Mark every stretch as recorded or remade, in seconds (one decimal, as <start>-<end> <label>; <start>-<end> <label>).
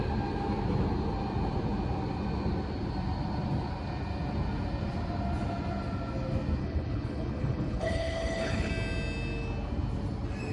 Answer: 0.0-6.6 recorded; 6.6-8.7 remade; 8.7-10.5 recorded